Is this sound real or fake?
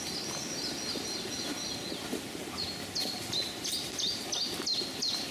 real